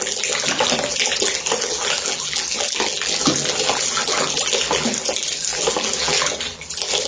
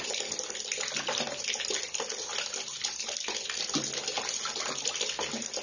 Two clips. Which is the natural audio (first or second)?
second